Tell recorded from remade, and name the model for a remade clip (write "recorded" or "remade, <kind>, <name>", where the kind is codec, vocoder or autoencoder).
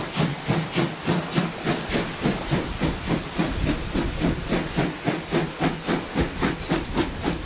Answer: recorded